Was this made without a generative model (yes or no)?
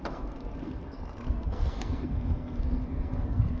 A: no